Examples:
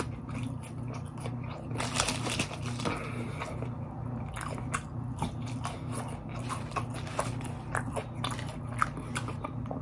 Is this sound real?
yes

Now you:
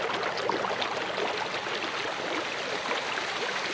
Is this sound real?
yes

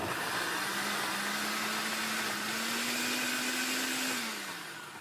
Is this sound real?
yes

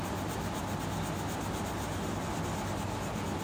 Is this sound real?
yes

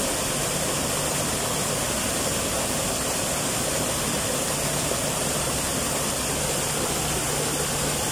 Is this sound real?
yes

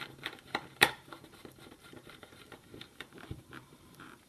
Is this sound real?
no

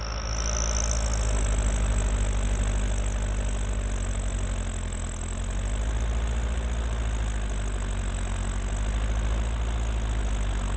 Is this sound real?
yes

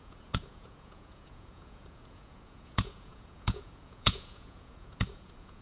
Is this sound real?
no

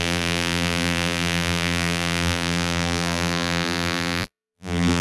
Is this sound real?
no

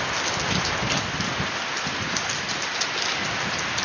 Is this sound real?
yes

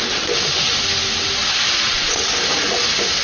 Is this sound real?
no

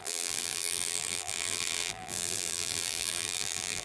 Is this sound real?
no